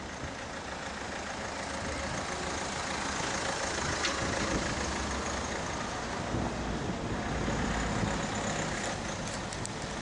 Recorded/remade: recorded